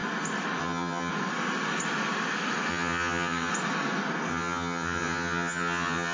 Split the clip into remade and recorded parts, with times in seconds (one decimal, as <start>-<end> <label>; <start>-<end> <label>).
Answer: 0.0-0.6 recorded; 0.6-1.1 remade; 1.1-2.7 recorded; 2.7-3.5 remade; 3.5-4.3 recorded; 4.3-6.1 remade